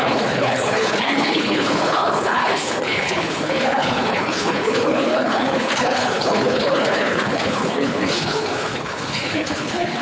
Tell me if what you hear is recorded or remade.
remade